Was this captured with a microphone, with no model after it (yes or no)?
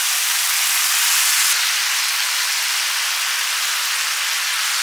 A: yes